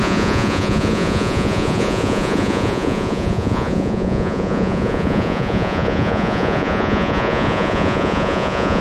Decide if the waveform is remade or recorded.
remade